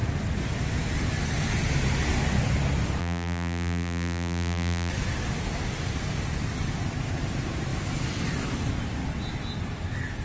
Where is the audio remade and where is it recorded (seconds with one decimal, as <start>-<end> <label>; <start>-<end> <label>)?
0.0-3.0 recorded; 3.0-4.9 remade; 4.9-10.2 recorded